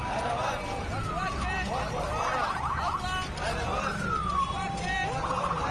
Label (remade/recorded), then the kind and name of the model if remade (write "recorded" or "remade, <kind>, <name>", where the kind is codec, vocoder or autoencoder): recorded